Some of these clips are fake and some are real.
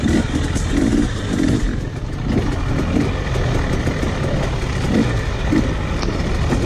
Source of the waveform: real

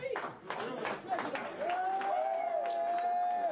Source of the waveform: real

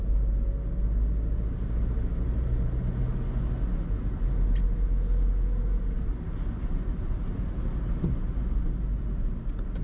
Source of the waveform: real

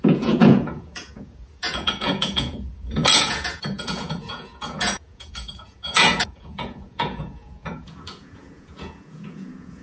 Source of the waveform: fake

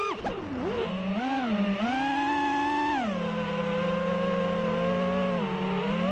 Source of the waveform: real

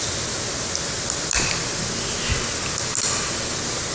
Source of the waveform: real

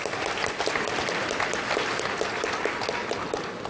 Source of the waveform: real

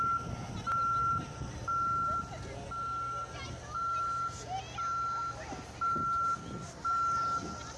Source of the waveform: real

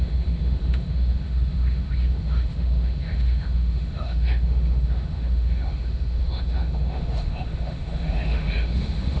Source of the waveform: fake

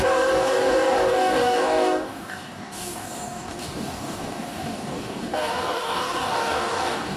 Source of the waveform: fake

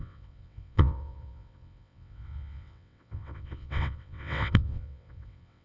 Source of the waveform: fake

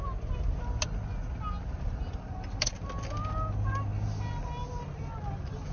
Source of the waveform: real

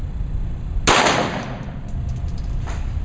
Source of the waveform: real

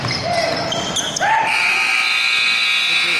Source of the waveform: real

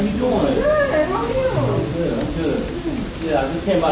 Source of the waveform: real